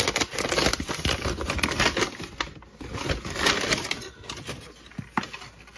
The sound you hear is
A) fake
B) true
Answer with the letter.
B